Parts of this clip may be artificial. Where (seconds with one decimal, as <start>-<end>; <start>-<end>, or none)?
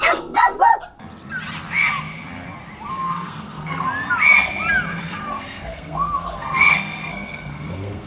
0.0-0.7; 2.9-3.8; 5.0-8.1